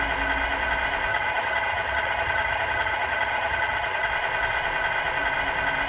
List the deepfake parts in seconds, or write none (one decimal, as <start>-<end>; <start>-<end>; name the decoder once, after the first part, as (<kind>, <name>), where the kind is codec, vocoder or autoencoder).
1.1-4.1 (vocoder, HiFi-GAN)